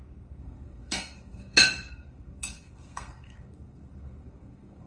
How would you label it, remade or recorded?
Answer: remade